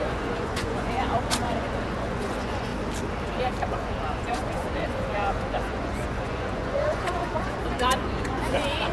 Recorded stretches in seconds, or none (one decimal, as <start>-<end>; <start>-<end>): 2.7-3.7